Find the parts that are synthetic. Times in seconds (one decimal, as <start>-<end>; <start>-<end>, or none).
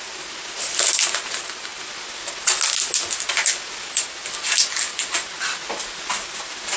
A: none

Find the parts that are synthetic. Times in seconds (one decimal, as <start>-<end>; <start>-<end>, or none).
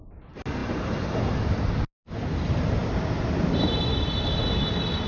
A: none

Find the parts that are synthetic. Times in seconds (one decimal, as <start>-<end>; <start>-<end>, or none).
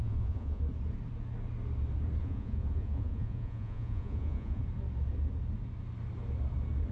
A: 0.0-0.6; 2.2-4.6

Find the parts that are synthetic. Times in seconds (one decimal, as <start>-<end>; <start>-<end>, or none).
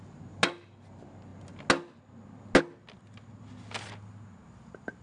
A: none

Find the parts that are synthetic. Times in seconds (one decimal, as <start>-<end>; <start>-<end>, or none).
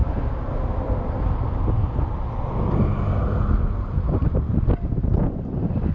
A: none